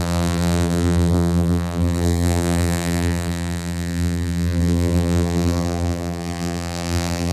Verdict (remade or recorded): remade